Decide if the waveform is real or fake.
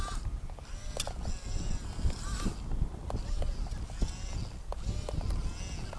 real